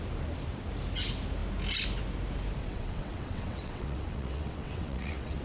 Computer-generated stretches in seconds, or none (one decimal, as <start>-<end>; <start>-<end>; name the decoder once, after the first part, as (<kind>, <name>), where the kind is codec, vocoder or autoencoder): 2.6-5.4 (vocoder, WaveNeXt)